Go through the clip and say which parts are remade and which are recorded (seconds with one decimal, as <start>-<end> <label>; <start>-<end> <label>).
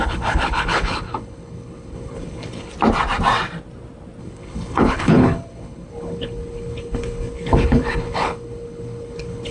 0.0-2.7 remade; 2.7-4.2 recorded; 4.2-9.5 remade